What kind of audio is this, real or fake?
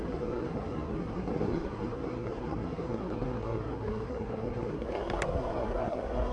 fake